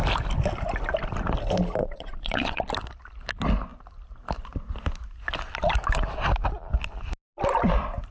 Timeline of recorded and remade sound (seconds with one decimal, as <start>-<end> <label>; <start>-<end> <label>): 0.0-1.8 recorded; 1.8-2.6 remade; 2.6-8.1 recorded